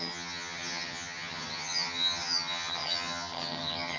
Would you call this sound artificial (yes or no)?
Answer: yes